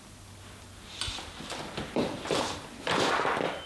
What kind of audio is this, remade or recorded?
remade